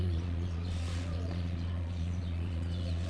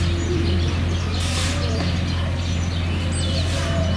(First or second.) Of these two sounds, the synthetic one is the first